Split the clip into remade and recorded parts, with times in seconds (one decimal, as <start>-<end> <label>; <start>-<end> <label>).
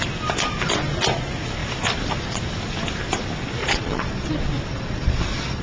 0.0-3.6 recorded; 3.6-4.3 remade; 4.3-4.7 recorded; 4.7-5.6 remade